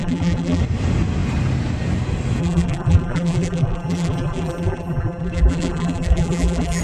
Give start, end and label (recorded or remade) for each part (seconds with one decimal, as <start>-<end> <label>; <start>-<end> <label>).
0.0-0.6 remade; 0.6-2.4 recorded; 2.4-6.8 remade